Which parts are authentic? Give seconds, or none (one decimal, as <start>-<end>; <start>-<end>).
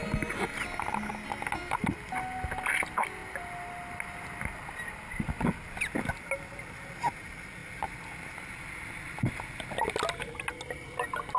0.0-11.4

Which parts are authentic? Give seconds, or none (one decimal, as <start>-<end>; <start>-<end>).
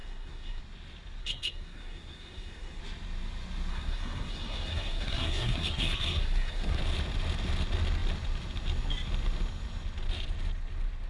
0.6-1.2; 2.8-3.7; 6.8-11.1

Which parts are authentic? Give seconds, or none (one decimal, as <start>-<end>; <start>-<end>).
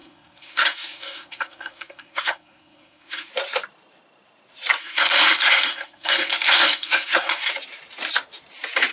3.3-4.8; 7.5-8.9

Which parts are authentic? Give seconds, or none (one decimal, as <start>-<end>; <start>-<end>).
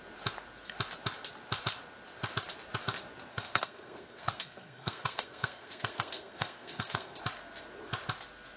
0.0-3.3; 7.2-8.6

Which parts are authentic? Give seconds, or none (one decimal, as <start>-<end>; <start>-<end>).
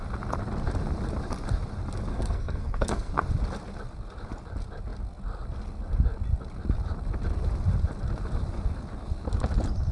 0.0-2.1; 3.1-9.9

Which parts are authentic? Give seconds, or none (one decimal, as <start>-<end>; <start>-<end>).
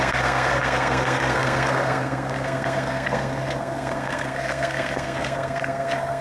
none